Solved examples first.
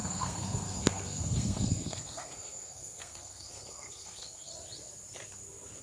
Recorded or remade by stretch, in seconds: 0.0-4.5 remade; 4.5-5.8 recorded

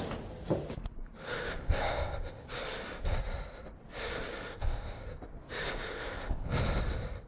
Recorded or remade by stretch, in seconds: 0.0-1.6 recorded; 1.6-2.5 remade; 2.5-4.5 recorded; 4.5-5.0 remade; 5.0-5.9 recorded; 5.9-6.5 remade; 6.5-7.3 recorded

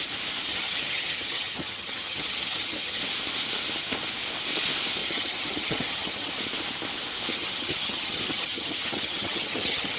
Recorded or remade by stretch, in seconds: 0.0-0.5 recorded; 0.5-3.0 remade; 3.0-5.0 recorded; 5.0-6.3 remade; 6.3-7.3 recorded; 7.3-10.0 remade

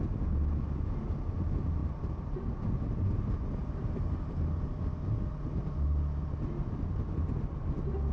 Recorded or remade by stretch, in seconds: 0.0-8.1 recorded

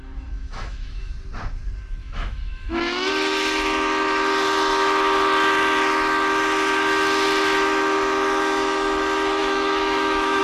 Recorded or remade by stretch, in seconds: 0.0-1.1 remade; 1.1-2.0 recorded; 2.0-3.1 remade; 3.1-9.4 recorded; 9.4-10.4 remade

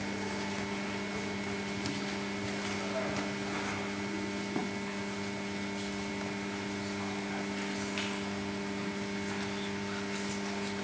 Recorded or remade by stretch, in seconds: 0.0-10.8 recorded

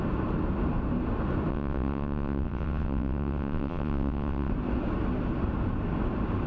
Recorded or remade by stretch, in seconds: 0.0-1.5 recorded; 1.5-4.5 remade; 4.5-6.5 recorded

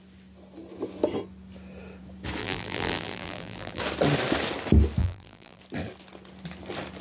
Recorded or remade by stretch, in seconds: 0.0-2.4 recorded; 2.4-3.8 remade; 3.8-5.0 recorded; 5.0-5.6 remade; 5.6-7.0 recorded